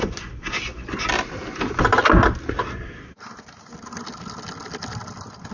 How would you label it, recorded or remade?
recorded